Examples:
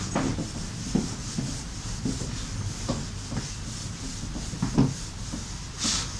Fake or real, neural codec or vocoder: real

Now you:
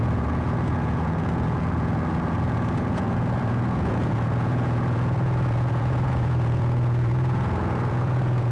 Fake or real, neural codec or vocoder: fake, vocoder, Vocos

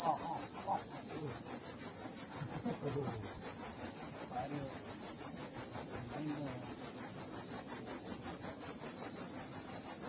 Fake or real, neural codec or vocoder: real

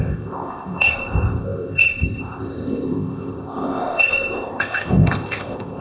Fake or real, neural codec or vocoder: fake, codec, ZipCodec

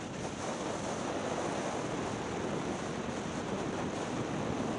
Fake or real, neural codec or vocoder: real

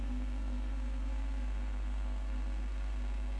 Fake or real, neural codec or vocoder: fake, codec, SNAC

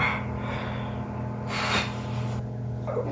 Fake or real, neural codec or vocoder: real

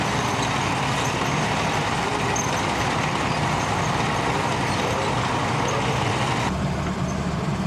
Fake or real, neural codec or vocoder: real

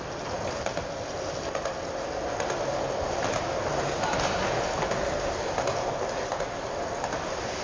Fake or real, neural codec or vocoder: real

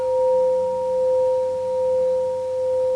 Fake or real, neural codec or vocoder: real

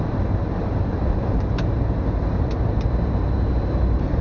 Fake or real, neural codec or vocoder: fake, vocoder, BigVGAN v2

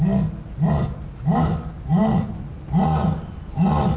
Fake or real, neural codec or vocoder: real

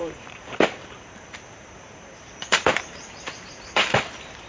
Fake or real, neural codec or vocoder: fake, vocoder, BigVGAN v2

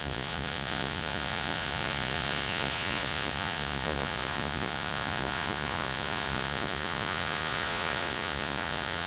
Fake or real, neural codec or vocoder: fake, vocoder, Vocos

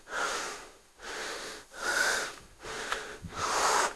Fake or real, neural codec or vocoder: fake, autoencoder, DAC-VAE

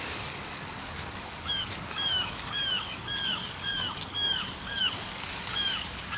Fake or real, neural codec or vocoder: fake, codec, DAC